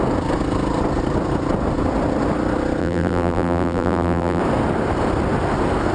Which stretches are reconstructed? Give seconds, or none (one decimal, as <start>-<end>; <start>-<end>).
2.8-4.4